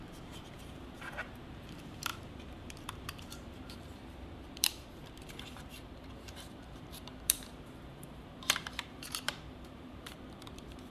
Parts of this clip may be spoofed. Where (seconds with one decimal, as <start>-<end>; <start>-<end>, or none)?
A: 0.0-10.9